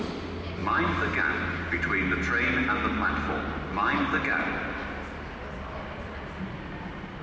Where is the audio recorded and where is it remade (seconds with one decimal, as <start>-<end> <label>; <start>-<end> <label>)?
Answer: 0.0-7.2 recorded